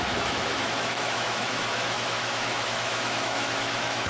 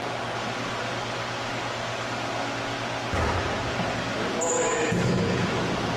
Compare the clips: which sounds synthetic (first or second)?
first